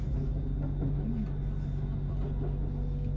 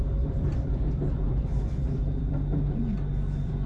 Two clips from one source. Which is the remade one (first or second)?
second